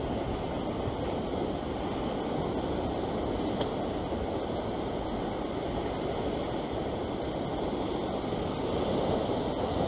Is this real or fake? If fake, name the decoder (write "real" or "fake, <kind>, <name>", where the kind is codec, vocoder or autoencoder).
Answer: real